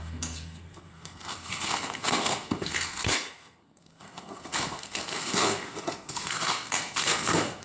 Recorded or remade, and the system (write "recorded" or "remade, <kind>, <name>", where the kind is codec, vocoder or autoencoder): remade, codec, SNAC